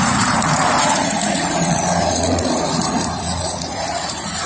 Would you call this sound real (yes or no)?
no